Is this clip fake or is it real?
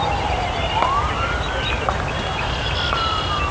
real